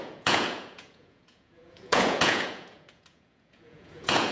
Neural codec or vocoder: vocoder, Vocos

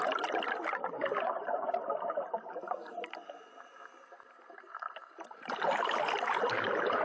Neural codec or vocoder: none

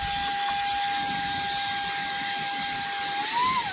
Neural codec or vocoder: none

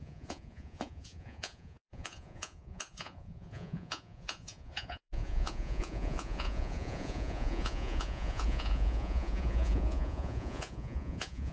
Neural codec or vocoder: vocoder, Vocos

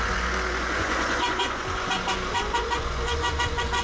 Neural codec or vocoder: vocoder, Vocos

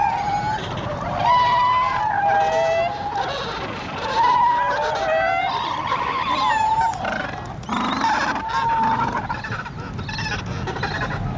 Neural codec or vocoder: none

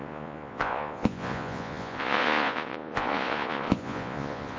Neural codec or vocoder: vocoder, Vocos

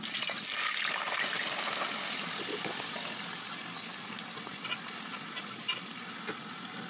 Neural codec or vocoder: none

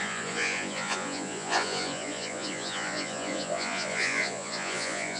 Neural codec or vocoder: vocoder, Vocos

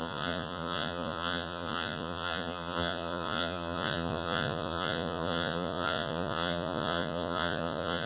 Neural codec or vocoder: vocoder, Vocos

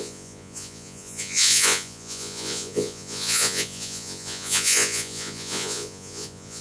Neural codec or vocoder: vocoder, Vocos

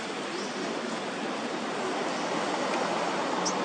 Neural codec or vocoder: none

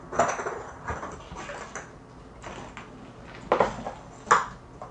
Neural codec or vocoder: none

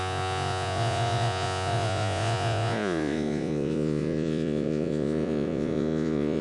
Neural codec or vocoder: vocoder, Vocos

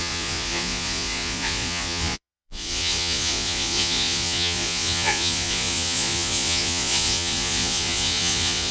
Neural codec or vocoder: vocoder, Vocos